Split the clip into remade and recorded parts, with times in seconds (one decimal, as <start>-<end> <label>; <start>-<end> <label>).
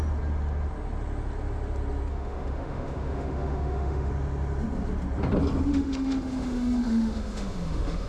0.0-2.1 recorded; 2.1-4.1 remade; 4.1-5.7 recorded; 5.7-8.1 remade